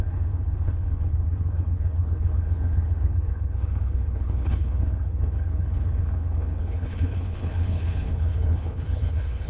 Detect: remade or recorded remade